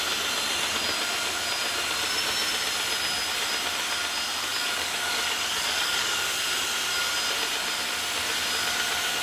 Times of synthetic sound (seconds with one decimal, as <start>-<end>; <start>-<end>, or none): 4.4-6.4